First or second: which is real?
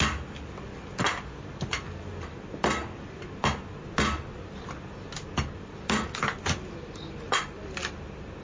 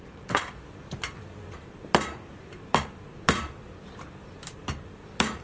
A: first